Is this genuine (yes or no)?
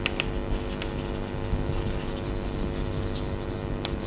yes